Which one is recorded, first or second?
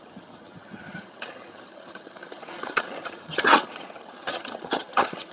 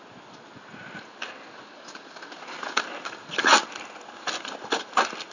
second